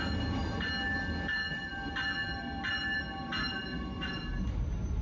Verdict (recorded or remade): recorded